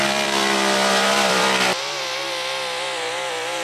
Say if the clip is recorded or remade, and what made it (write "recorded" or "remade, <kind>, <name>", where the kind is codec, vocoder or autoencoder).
remade, vocoder, BigVGAN v2